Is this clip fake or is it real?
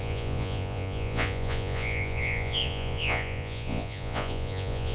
fake